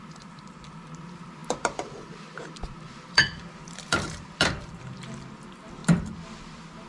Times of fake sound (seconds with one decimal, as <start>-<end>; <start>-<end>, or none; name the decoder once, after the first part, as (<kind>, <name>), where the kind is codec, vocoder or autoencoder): 0.0-5.8 (vocoder, BigVGAN v2); 6.4-6.9